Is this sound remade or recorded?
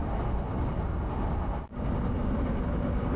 recorded